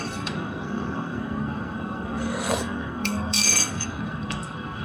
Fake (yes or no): yes